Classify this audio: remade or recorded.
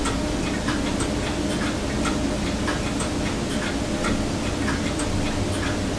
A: recorded